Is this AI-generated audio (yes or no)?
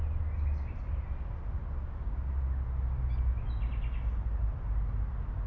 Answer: no